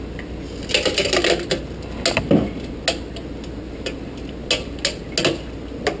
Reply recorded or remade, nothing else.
recorded